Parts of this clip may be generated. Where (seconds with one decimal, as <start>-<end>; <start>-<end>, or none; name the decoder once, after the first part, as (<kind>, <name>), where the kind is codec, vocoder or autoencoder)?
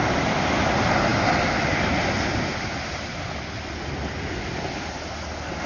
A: none